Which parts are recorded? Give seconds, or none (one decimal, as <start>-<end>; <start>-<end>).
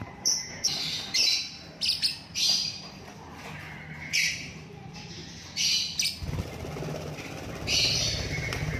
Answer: 1.3-2.3; 3.3-4.1; 5.2-7.9